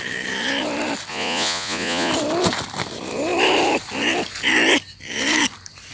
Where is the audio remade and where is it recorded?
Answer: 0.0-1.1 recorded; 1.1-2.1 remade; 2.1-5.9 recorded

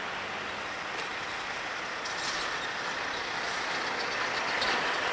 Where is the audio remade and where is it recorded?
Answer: 0.0-5.1 recorded

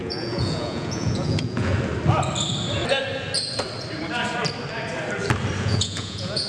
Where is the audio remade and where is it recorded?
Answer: 0.0-1.7 remade; 1.7-5.6 recorded; 5.6-6.5 remade

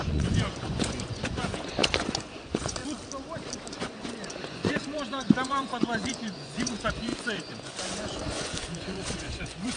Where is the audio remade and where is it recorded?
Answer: 0.0-2.8 remade; 2.8-3.8 recorded; 3.8-9.8 remade

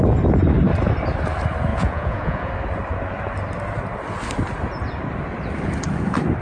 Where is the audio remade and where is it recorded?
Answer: 0.0-1.7 recorded; 1.7-2.5 remade; 2.5-6.4 recorded

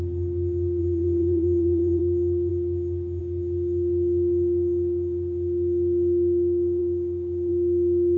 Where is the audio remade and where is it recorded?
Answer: 0.0-0.8 recorded; 0.8-2.0 remade; 2.0-8.2 recorded

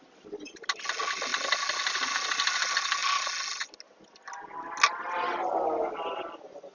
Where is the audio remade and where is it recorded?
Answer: 0.0-6.7 recorded

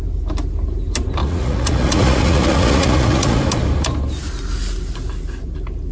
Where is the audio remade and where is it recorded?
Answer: 0.0-1.2 recorded; 1.2-3.4 remade; 3.4-5.9 recorded